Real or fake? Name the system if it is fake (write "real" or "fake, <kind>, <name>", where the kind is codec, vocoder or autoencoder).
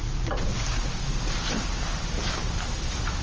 real